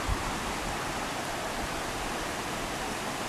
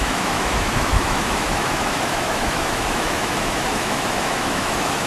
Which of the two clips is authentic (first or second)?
first